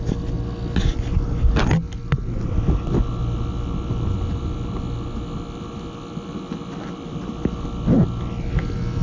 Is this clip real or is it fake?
real